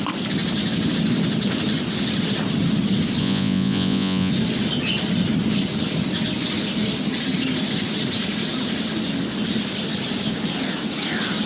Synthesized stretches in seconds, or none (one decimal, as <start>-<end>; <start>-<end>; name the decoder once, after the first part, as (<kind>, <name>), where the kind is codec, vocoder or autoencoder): 3.2-4.3 (vocoder, Vocos)